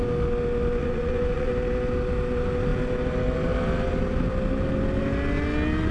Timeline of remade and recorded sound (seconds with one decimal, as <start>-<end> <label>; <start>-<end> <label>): 0.0-0.8 recorded; 0.8-1.5 remade; 1.5-5.9 recorded